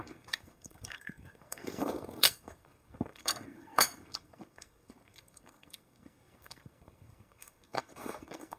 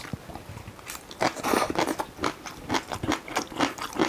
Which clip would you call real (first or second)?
second